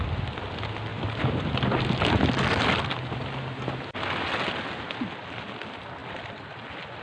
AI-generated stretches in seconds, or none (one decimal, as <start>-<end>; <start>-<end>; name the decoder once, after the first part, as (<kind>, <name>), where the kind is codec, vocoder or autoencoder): none